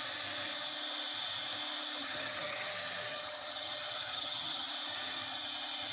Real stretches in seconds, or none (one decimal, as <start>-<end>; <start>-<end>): 0.0-2.0; 2.7-3.1; 4.7-5.9